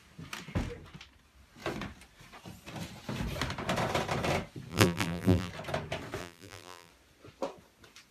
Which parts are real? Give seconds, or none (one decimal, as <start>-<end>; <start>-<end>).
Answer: 0.0-4.7; 5.5-6.2; 6.9-8.1